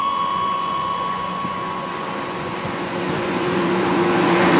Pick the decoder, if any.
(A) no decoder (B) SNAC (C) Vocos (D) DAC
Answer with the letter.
C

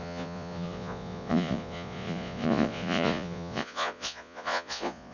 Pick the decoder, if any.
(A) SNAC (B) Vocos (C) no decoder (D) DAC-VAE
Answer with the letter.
B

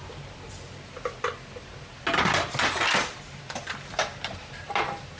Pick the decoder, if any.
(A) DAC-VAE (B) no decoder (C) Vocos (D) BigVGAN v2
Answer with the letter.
B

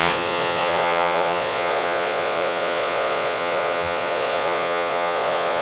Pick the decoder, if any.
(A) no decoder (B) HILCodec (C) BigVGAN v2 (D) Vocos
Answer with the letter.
D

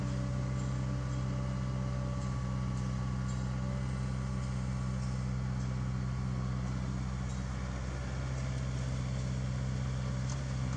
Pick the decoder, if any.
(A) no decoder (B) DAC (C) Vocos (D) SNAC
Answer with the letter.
A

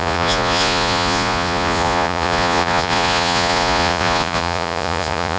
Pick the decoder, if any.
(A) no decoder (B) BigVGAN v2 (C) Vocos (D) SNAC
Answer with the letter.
C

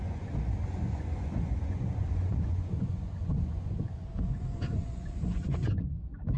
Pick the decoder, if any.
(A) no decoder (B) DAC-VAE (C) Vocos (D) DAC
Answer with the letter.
C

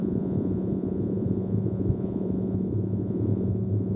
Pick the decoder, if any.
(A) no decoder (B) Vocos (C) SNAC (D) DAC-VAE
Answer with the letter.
B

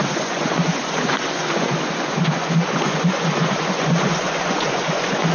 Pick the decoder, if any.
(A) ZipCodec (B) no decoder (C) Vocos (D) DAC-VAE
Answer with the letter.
C